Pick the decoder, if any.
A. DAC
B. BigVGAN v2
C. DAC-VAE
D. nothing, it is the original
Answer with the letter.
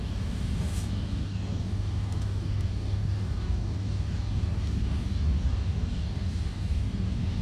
A